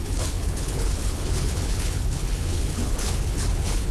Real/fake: fake